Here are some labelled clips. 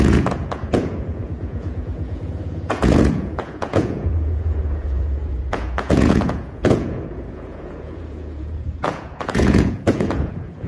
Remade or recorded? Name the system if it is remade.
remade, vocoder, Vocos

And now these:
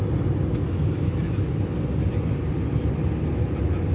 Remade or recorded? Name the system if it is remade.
recorded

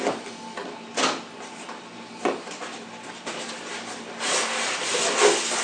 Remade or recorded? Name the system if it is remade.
recorded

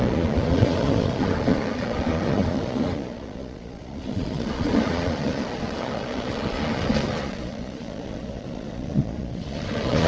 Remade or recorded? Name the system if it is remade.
remade, vocoder, Vocos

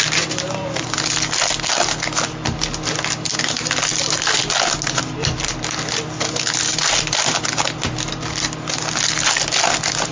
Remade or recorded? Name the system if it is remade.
recorded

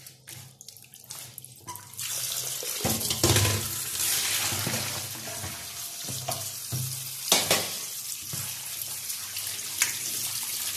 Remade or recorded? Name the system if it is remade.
recorded